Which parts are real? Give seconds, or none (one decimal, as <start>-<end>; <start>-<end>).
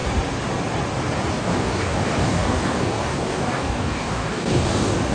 0.0-1.3